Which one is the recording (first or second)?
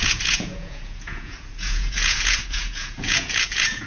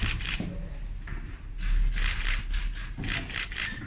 second